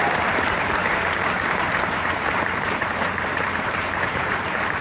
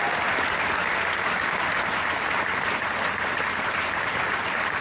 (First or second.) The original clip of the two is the second